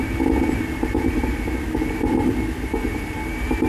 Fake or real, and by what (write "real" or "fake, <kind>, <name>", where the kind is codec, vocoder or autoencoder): real